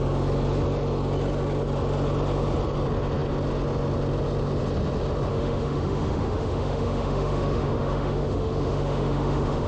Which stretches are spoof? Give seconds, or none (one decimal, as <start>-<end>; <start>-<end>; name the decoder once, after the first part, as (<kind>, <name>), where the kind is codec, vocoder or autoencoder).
5.3-9.7 (autoencoder, DAC-VAE)